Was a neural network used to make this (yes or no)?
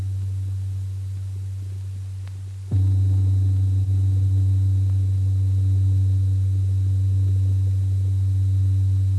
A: no